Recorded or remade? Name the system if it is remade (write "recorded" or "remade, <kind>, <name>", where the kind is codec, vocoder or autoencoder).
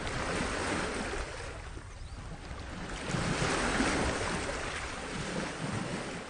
recorded